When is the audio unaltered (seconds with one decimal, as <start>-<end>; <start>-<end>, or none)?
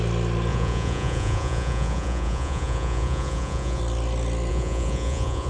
0.0-0.5; 3.8-4.5